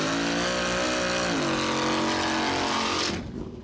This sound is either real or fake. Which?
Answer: real